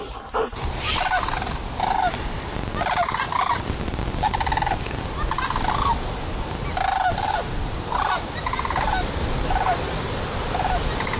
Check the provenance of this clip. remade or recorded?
recorded